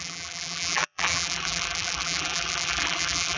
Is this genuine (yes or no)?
no